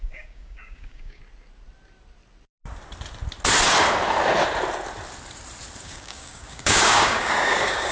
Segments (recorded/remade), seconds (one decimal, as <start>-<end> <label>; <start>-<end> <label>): 0.0-1.2 remade; 1.2-5.8 recorded; 5.8-7.9 remade